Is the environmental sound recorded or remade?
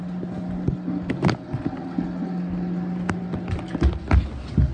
recorded